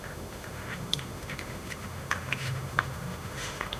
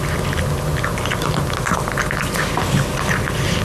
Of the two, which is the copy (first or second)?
first